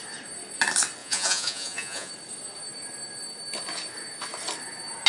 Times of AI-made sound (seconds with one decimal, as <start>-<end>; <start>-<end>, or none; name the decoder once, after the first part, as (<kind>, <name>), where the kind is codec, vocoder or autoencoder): 1.0-2.1 (vocoder, Vocos)